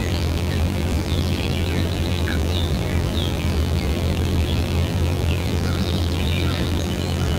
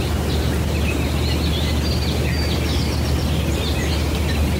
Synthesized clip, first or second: first